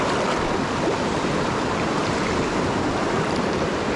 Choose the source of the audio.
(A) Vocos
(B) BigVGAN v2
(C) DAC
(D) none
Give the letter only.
B